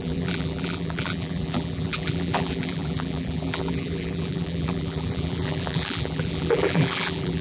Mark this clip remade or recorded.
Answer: remade